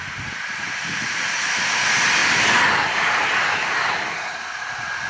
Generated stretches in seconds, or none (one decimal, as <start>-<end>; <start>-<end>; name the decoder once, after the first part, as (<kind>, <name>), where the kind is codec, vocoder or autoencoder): none